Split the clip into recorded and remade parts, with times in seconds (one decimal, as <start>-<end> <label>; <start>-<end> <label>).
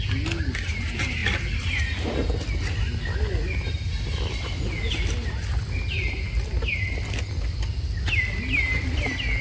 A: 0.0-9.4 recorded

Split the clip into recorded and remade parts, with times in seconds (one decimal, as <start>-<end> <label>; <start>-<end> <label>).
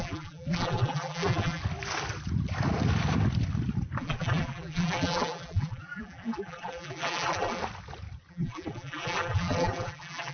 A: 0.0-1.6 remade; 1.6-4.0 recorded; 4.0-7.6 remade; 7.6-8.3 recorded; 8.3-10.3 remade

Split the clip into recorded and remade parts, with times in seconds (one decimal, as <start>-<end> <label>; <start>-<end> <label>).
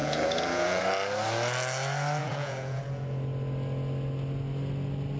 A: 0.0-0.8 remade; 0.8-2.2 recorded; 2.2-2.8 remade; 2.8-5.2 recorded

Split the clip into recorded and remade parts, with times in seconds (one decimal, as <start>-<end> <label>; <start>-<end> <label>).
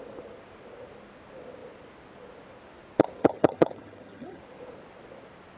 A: 0.0-3.2 recorded; 3.2-4.4 remade; 4.4-5.6 recorded